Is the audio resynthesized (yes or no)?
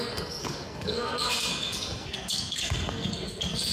yes